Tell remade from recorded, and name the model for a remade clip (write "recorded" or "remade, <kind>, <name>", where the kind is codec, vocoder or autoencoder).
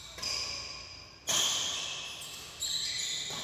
recorded